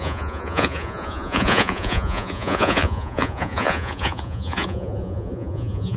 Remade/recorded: remade